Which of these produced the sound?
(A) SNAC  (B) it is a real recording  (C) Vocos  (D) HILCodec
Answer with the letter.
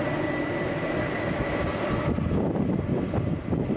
B